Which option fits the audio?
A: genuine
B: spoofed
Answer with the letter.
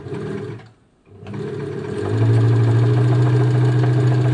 A